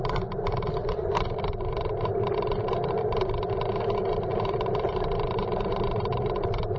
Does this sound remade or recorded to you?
remade